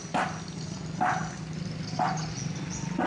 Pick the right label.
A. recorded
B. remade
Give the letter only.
A